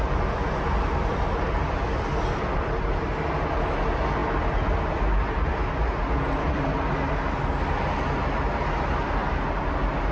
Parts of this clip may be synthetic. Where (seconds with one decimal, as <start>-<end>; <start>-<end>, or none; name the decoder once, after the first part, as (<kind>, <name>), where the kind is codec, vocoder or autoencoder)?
none